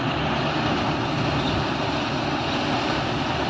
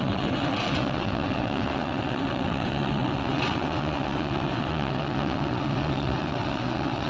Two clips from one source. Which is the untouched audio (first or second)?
first